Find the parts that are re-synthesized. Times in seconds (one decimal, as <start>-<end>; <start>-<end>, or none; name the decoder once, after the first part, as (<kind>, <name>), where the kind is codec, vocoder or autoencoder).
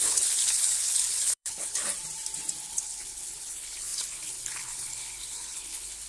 0.0-1.9 (codec, HILCodec); 2.6-6.1